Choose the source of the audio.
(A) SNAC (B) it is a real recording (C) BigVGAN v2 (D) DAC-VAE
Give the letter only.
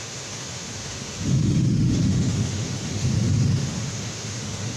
D